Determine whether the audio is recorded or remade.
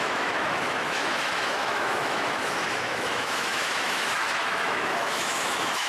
remade